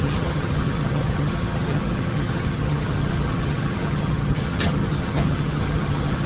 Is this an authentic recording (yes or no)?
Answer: no